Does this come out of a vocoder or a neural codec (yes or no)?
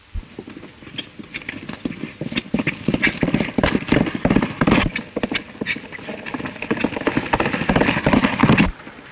no